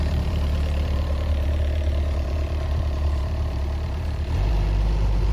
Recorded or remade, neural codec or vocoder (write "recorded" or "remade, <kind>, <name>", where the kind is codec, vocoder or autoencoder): remade, vocoder, BigVGAN v2